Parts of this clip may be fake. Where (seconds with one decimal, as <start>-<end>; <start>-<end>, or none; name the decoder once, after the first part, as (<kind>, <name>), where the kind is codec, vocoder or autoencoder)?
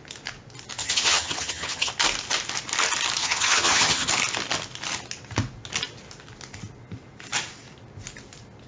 0.8-1.9 (vocoder, HiFi-GAN); 3.2-4.1